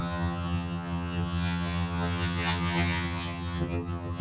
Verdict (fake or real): fake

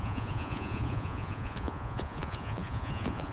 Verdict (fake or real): fake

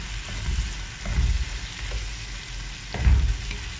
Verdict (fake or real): real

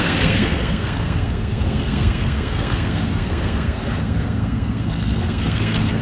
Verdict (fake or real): fake